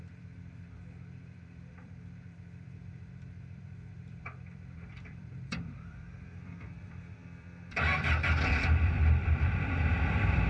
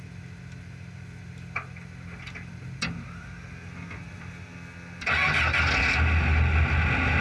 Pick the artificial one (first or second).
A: first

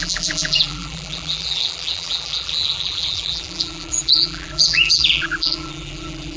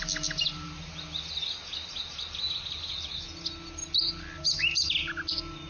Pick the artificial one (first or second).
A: first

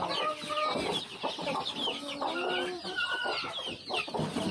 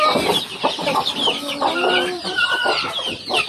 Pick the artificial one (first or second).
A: second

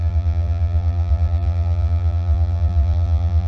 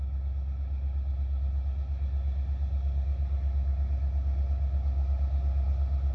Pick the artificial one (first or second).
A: first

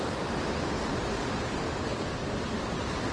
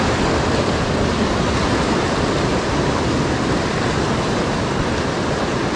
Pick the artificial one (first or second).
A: second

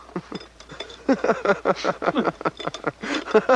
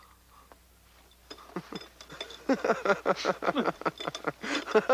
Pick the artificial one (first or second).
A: first